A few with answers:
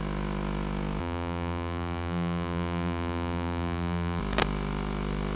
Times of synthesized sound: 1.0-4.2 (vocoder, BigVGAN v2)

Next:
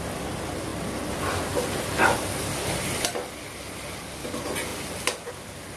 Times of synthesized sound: none

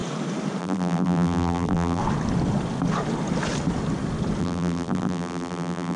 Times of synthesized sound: 0.6-2.0 (vocoder, BigVGAN v2); 4.4-6.0

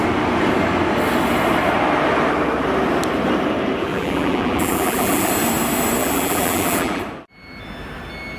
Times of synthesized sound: 3.9-5.3 (vocoder, BigVGAN v2); 6.0-7.0

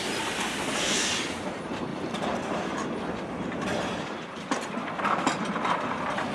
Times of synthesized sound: 1.9-4.8 (vocoder, BigVGAN v2)

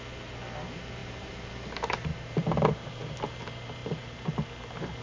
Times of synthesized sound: 1.0-1.5 (vocoder, BigVGAN v2); 2.1-3.1; 3.8-4.3

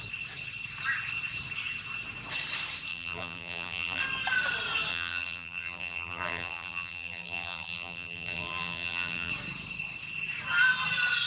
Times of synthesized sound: 2.9-4.0 (vocoder, BigVGAN v2); 4.9-9.3